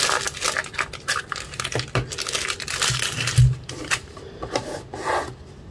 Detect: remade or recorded recorded